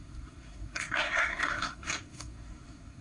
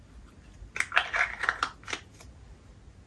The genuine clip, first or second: second